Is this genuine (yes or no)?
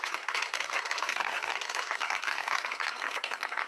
no